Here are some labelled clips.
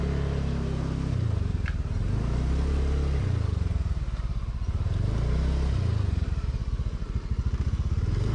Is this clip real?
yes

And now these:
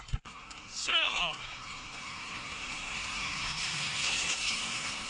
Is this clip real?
no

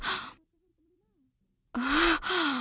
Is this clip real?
yes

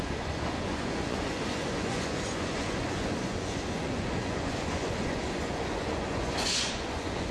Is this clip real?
no